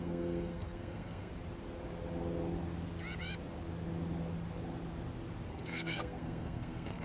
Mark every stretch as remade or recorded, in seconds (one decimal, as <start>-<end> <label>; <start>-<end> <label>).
0.0-1.3 remade; 1.3-5.5 recorded; 5.5-7.0 remade